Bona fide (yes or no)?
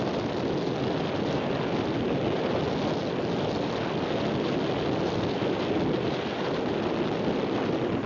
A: yes